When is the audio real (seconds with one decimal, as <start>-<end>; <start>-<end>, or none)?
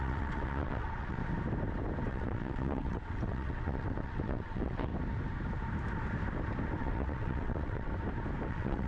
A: 1.2-2.1; 4.9-6.8; 7.9-8.5